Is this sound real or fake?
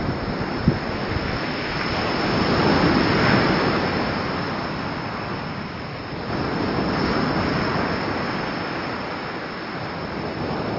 real